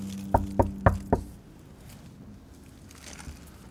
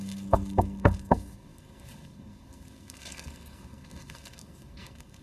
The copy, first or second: second